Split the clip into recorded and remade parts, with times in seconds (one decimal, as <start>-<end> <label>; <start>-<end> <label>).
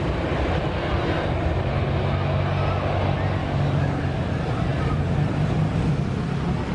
0.0-3.4 recorded; 3.4-4.0 remade; 4.0-6.7 recorded